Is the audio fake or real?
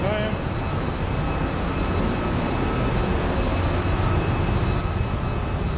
real